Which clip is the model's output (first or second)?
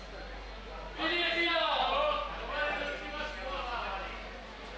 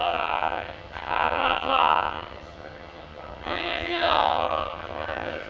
second